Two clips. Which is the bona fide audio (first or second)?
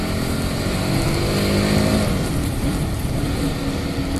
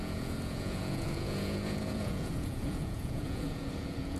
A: first